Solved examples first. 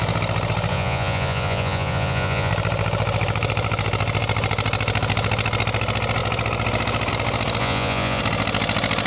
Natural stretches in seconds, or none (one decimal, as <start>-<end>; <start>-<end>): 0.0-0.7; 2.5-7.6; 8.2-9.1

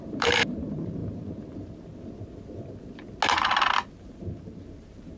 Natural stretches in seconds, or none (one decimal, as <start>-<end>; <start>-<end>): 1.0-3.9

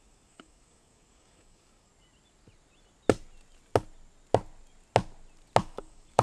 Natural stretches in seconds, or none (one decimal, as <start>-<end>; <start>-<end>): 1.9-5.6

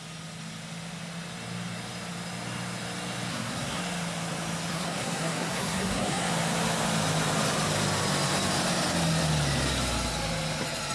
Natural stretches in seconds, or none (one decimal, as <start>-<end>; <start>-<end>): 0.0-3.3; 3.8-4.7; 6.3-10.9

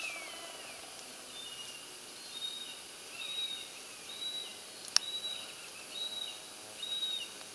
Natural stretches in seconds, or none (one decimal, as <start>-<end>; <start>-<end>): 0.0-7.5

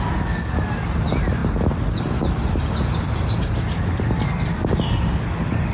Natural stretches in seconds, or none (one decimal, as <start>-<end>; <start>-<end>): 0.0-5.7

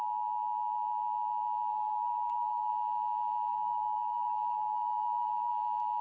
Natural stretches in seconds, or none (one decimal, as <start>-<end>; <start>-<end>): 0.0-1.7; 2.7-3.5; 5.5-6.0

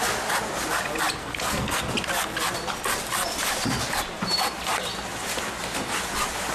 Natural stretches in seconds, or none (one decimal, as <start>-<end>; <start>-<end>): 0.0-1.2; 1.8-6.5